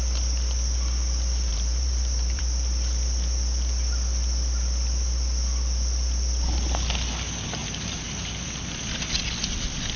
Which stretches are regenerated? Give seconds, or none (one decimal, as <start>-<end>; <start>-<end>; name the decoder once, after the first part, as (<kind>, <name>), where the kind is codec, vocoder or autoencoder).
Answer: 1.5-2.4 (vocoder, BigVGAN v2); 7.6-8.3